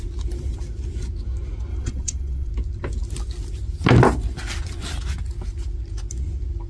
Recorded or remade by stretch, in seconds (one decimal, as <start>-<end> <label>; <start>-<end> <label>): 0.0-1.7 recorded; 1.7-2.5 remade; 2.5-6.7 recorded